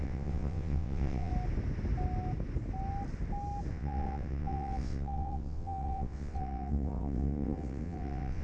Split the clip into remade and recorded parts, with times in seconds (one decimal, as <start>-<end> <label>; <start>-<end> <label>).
0.0-1.3 remade; 1.3-3.7 recorded; 3.7-8.4 remade